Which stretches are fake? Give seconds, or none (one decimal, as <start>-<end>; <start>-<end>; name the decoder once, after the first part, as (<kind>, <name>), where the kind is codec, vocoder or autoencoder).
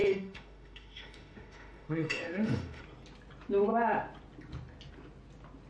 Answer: 0.0-2.8 (autoencoder, DAC-VAE)